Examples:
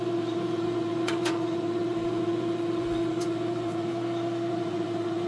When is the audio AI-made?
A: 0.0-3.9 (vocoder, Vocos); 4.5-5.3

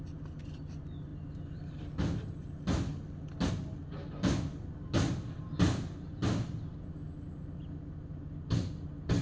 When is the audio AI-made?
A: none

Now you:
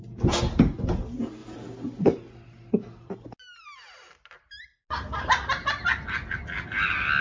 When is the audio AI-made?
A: none